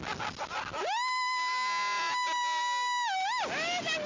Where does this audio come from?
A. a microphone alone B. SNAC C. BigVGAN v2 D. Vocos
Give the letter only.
A